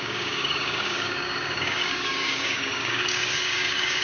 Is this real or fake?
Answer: fake